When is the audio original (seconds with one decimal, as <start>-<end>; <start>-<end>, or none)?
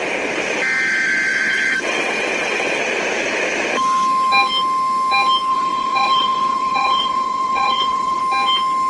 0.0-1.3; 2.8-5.5; 8.2-8.9